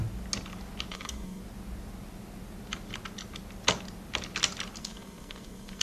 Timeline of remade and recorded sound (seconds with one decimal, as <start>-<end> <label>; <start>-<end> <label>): 0.0-0.9 recorded; 0.9-1.4 remade; 1.4-4.8 recorded; 4.8-5.8 remade